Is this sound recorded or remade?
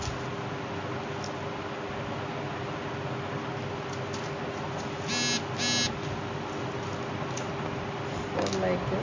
recorded